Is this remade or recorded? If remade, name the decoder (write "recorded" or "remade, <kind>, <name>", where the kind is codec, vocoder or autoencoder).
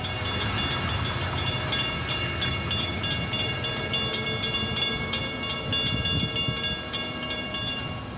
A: recorded